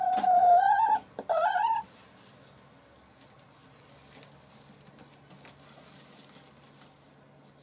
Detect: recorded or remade recorded